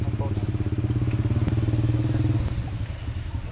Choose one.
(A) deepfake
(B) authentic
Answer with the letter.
B